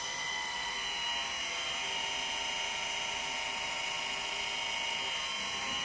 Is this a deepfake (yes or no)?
no